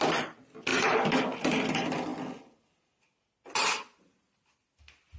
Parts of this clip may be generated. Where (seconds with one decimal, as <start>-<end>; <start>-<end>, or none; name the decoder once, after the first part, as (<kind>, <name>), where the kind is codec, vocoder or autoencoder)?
none